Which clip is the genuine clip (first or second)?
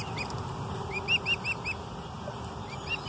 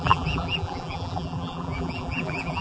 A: first